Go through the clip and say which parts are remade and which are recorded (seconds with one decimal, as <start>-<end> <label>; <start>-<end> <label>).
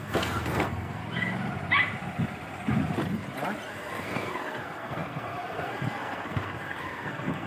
0.0-1.0 remade; 1.0-3.7 recorded; 3.7-7.5 remade